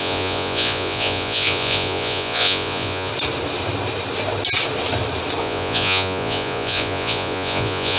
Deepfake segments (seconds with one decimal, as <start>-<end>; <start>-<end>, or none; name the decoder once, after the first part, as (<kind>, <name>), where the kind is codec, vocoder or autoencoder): 0.0-3.1 (vocoder, Vocos); 5.4-8.0